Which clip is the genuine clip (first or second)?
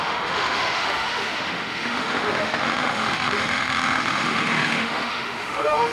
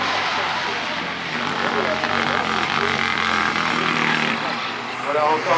second